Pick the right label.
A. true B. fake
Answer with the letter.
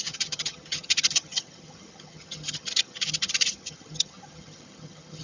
B